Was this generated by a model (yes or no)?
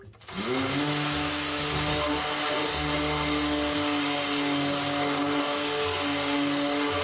no